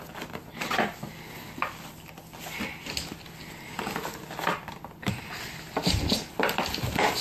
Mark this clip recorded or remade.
recorded